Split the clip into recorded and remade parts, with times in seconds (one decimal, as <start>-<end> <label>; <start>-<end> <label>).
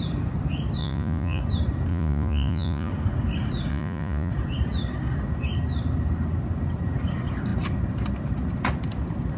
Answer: 0.0-0.8 recorded; 0.8-1.4 remade; 1.4-1.9 recorded; 1.9-2.9 remade; 2.9-3.7 recorded; 3.7-4.3 remade; 4.3-9.4 recorded